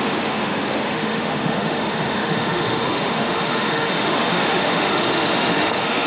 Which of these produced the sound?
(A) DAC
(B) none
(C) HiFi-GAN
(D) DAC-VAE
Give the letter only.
D